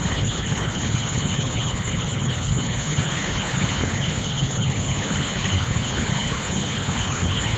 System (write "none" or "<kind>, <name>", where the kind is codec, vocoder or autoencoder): codec, HILCodec